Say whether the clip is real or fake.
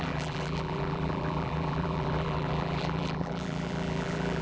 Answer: fake